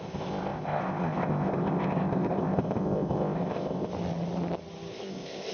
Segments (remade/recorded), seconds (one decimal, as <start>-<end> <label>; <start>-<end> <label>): 0.0-3.9 remade; 3.9-4.9 recorded; 4.9-5.5 remade